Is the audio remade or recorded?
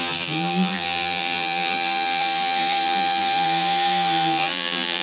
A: remade